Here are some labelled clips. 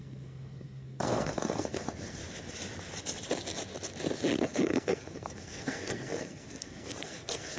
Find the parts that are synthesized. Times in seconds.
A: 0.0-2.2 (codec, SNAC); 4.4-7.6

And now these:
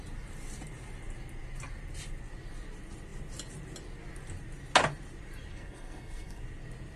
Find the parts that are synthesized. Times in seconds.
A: 5.5-6.4 (codec, SNAC)

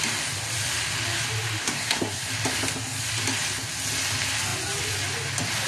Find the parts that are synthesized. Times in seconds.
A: 1.6-2.3 (codec, SNAC)

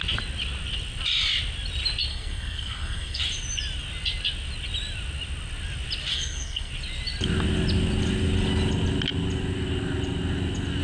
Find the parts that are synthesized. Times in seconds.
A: 2.1-3.2 (codec, SNAC); 6.1-6.7

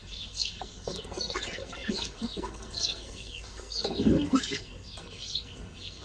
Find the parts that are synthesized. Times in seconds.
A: 0.0-6.0 (codec, SNAC)